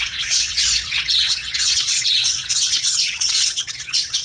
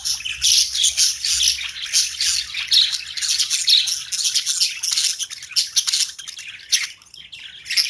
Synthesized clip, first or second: first